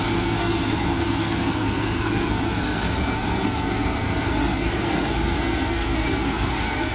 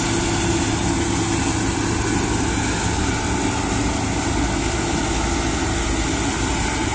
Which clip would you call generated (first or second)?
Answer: first